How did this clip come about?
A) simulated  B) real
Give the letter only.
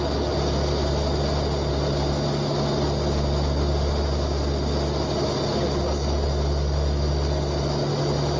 B